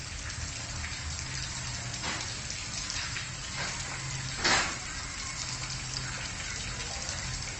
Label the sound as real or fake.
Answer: real